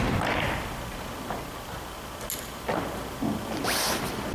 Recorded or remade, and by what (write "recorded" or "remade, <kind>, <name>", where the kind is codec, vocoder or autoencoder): recorded